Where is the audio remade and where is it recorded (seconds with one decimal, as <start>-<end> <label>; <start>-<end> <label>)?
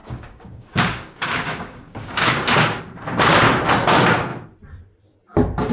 0.0-2.8 remade; 2.8-5.7 recorded